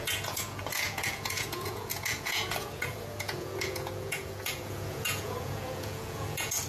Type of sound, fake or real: fake